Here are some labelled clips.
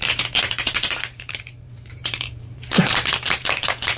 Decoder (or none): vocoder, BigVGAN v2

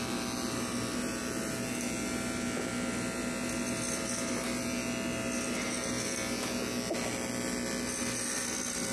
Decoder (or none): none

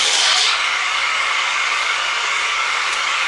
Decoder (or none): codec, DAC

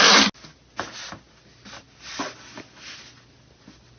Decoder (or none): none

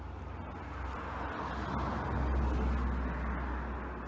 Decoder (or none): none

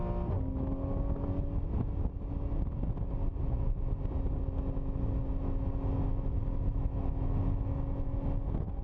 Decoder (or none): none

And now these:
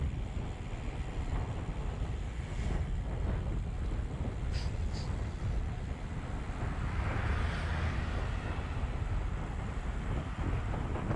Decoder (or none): none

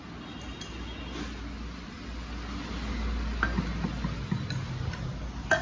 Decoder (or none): none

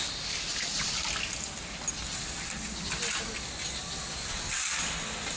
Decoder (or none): none